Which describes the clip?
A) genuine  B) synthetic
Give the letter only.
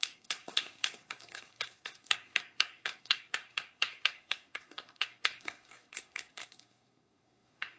B